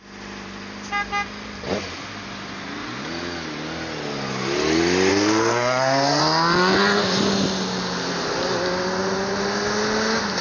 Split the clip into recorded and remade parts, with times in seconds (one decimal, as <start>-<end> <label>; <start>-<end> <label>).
0.0-5.1 recorded; 5.1-6.2 remade; 6.2-10.4 recorded